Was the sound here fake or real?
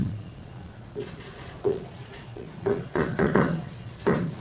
fake